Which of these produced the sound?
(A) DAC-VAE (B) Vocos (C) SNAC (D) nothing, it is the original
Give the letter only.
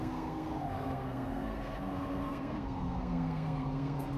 C